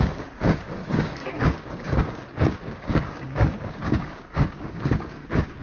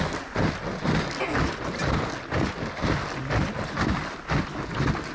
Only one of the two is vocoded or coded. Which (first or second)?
first